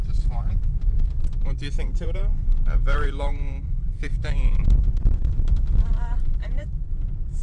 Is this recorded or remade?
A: remade